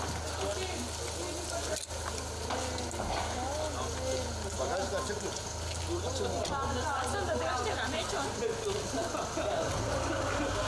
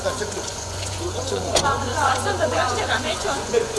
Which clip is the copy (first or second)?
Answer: second